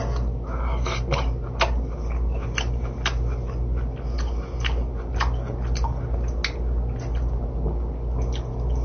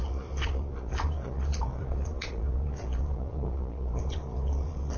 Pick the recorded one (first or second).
first